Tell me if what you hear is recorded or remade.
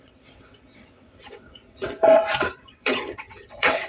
remade